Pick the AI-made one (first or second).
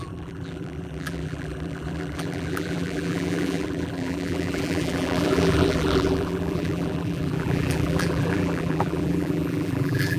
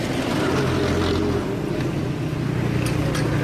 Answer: first